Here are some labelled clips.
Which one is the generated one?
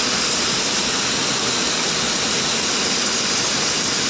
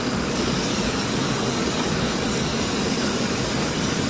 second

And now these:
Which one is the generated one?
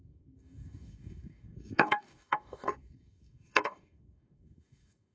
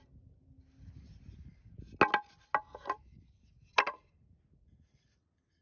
first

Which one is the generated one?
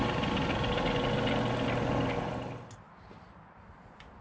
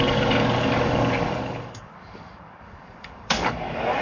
second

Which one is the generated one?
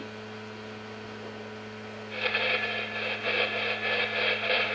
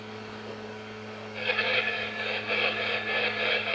second